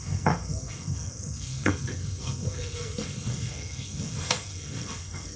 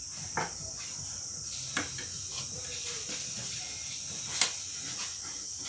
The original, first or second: second